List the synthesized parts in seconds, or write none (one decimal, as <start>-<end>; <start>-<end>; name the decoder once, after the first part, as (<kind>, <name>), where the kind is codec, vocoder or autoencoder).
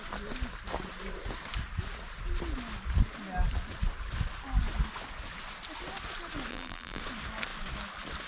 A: 6.5-7.0 (vocoder, BigVGAN v2)